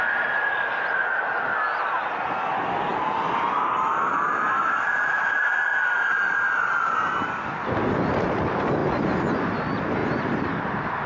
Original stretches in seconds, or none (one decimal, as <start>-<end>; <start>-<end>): 0.0-11.1